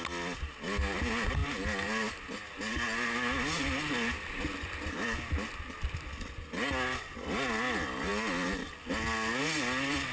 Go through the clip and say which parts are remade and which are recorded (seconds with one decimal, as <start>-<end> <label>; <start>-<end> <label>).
0.0-8.1 recorded; 8.1-9.0 remade; 9.0-10.1 recorded